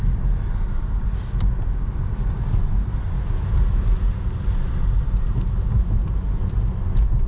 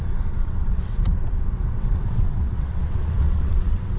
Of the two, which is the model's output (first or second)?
second